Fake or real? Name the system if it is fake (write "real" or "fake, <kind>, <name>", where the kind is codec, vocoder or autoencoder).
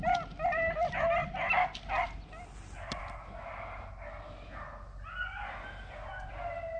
real